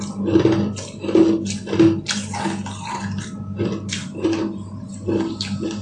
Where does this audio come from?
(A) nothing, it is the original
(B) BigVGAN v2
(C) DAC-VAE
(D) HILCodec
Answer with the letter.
A